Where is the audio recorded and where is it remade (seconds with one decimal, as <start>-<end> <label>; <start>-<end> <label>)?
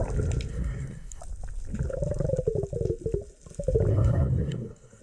0.0-0.5 recorded; 0.5-1.2 remade; 1.2-3.9 recorded; 3.9-5.0 remade